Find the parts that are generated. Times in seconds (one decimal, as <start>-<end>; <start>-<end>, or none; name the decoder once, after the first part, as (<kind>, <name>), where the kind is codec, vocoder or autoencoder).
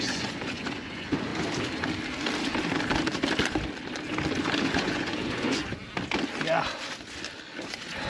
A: 0.0-1.3 (vocoder, Vocos); 4.4-5.8; 7.6-8.1